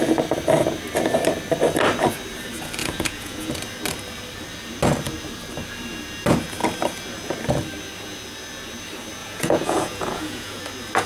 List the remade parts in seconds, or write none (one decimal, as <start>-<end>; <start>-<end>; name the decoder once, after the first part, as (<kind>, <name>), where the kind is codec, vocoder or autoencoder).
2.8-3.5 (vocoder, Vocos); 9.2-10.6